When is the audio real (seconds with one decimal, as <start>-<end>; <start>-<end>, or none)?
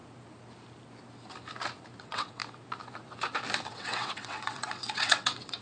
0.0-2.0; 2.4-3.7